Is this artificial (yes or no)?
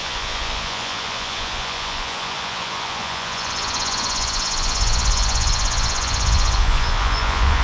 yes